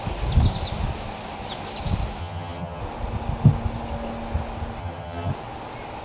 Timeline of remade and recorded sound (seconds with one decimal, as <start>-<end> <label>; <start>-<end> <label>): 0.0-2.2 recorded; 2.2-2.8 remade; 2.8-4.8 recorded; 4.8-5.3 remade; 5.3-6.0 recorded